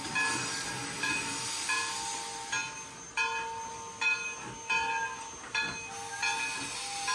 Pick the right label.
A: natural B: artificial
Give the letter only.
A